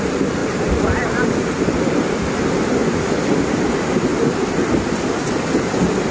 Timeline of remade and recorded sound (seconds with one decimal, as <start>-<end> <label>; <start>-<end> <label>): 0.0-0.4 remade; 0.4-2.3 recorded; 2.3-4.1 remade; 4.1-6.1 recorded